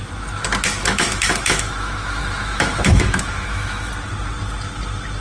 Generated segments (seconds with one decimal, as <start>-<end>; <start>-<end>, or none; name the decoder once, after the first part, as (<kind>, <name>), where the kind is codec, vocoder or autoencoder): 0.8-3.9 (autoencoder, DAC-VAE)

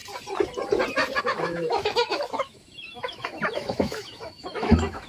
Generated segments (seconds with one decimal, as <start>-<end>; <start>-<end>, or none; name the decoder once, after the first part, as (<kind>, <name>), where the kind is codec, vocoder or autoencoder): 1.2-5.1 (autoencoder, DAC-VAE)

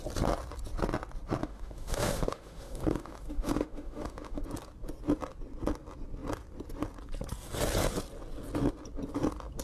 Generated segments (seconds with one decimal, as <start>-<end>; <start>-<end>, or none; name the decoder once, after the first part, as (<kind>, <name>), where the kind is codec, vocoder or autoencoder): 1.4-4.4 (autoencoder, DAC-VAE)

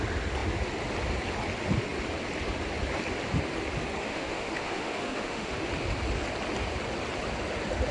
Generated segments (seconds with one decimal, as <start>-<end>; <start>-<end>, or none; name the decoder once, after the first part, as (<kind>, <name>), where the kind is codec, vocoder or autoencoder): 4.0-5.7 (autoencoder, DAC-VAE)

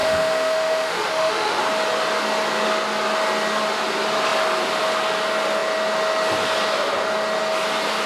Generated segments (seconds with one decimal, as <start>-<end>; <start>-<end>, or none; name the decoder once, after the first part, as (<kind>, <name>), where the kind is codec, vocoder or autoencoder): 0.0-1.6 (autoencoder, DAC-VAE)